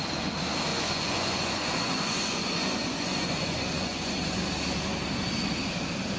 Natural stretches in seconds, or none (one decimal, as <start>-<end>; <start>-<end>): 0.0-0.7; 4.4-6.2